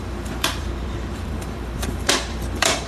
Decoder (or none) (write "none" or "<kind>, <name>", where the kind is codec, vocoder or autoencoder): vocoder, BigVGAN v2